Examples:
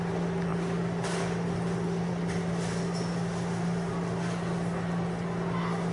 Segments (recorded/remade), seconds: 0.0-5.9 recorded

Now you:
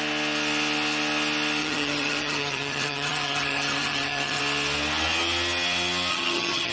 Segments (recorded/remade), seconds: 0.0-1.6 recorded; 1.6-4.4 remade; 4.4-6.1 recorded; 6.1-6.7 remade